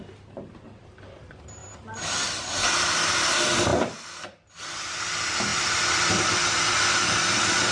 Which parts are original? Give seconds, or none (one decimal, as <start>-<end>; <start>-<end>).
0.0-7.7